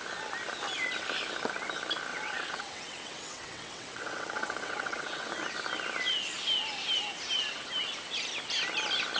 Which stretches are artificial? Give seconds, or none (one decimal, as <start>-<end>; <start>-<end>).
2.1-5.3